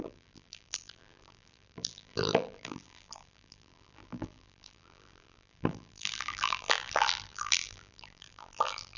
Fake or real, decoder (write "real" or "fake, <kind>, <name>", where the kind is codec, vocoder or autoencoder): fake, vocoder, BigVGAN v2